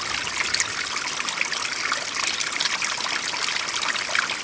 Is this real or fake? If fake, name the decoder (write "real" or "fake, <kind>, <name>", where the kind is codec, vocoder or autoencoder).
real